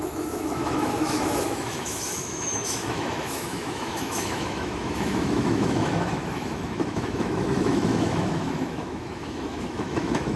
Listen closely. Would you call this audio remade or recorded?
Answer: remade